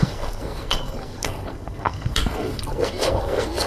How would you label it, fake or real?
fake